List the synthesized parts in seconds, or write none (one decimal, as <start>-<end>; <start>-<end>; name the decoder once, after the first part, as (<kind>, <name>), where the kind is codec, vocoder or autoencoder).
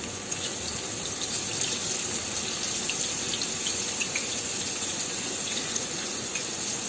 0.0-0.5 (vocoder, Vocos); 3.7-6.9